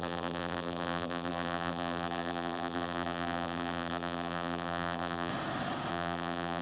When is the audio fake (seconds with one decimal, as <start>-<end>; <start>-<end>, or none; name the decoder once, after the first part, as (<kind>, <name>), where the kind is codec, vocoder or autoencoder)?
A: 0.0-5.3 (vocoder, BigVGAN v2); 5.9-6.6